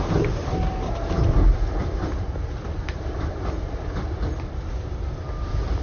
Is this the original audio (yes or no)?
no